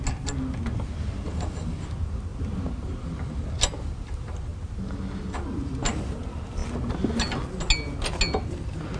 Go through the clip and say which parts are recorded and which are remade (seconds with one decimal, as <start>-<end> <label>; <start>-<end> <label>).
0.0-9.0 recorded